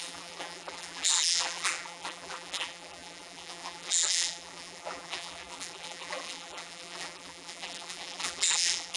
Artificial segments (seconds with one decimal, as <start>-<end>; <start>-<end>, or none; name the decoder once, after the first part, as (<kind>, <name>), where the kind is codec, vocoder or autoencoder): 0.0-9.0 (vocoder, BigVGAN v2)